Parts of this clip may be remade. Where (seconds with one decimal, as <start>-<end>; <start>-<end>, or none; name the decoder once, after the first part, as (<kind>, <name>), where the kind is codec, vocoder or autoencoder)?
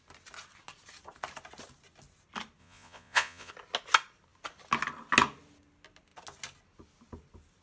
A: 2.6-3.5 (vocoder, Vocos)